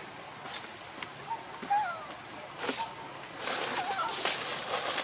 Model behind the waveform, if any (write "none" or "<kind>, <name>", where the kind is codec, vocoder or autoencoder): none